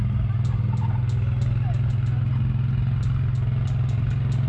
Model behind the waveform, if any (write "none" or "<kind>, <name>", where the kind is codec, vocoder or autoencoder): none